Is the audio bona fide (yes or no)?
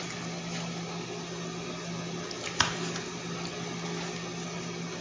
yes